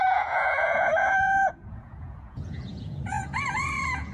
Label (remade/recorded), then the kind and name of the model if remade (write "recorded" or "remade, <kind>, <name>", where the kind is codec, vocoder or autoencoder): remade, vocoder, Vocos